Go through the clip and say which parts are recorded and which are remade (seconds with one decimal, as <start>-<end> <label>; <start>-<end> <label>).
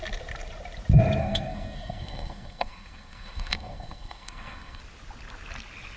0.0-1.2 recorded; 1.2-4.8 remade; 4.8-6.0 recorded